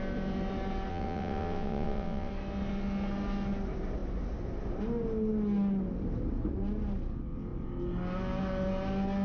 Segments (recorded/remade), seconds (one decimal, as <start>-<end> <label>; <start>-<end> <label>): 0.0-0.9 recorded; 0.9-2.3 remade; 2.3-9.2 recorded